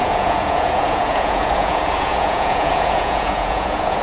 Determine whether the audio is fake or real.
fake